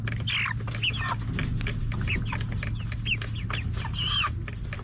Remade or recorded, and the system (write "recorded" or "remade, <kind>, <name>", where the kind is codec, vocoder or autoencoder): recorded